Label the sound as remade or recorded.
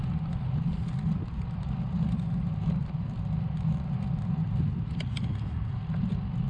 recorded